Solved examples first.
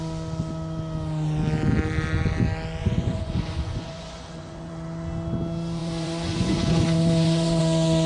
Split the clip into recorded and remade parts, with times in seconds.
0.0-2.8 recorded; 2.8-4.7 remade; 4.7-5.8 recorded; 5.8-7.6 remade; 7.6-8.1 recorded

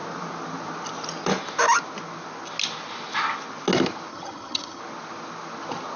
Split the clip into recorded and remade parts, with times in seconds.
0.0-4.1 recorded; 4.1-4.8 remade; 4.8-6.0 recorded

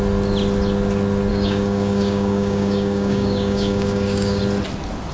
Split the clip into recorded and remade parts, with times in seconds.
0.0-1.3 recorded; 1.3-4.4 remade; 4.4-5.1 recorded

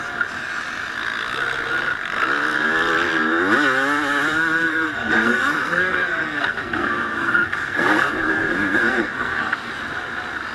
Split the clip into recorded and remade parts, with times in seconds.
0.0-4.6 recorded; 4.6-9.7 remade; 9.7-10.5 recorded

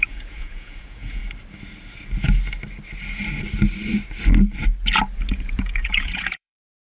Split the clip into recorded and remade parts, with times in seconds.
0.0-1.2 remade; 1.2-5.3 recorded; 5.3-6.8 remade

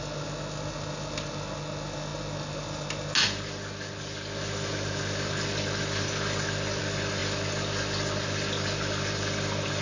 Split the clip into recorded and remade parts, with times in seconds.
0.0-9.8 recorded